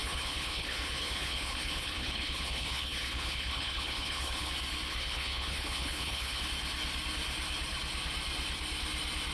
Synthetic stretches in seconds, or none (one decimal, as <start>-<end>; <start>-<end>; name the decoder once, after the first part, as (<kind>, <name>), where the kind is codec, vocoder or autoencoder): 0.0-4.5 (codec, HILCodec); 4.9-6.4